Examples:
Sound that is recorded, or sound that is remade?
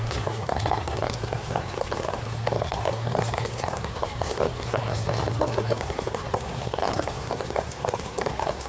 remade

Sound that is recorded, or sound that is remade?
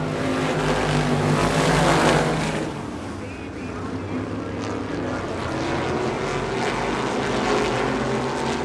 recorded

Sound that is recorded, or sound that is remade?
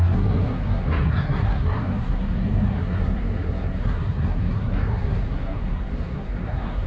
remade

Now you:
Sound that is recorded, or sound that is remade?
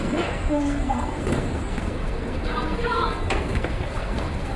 remade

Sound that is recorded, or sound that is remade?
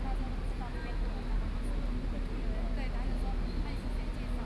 recorded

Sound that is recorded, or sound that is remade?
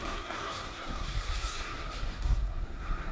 remade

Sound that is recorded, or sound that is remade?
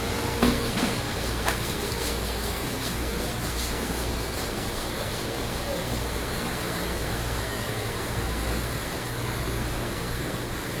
remade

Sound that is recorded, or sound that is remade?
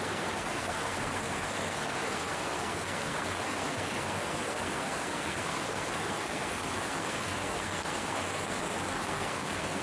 remade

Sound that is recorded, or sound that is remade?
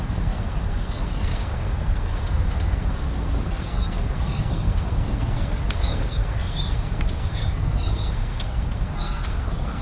remade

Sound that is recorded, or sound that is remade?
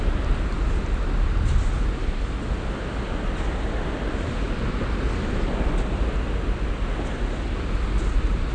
recorded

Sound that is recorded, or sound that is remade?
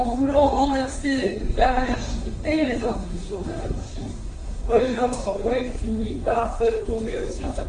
remade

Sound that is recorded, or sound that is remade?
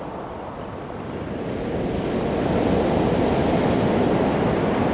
recorded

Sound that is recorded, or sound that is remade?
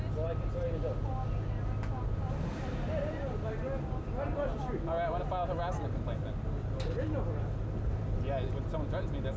recorded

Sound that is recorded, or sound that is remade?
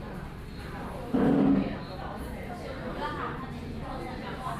recorded